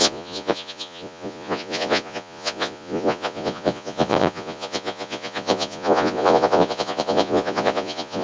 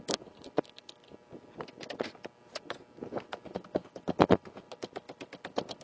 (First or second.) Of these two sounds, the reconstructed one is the first